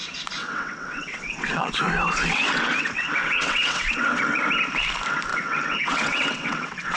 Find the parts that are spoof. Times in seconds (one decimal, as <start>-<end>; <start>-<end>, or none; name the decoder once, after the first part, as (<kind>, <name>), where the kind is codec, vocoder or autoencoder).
0.4-1.7 (vocoder, WaveNeXt); 2.2-4.4; 5.3-7.0